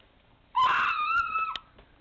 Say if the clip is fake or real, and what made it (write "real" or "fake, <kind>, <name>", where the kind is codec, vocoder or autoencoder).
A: real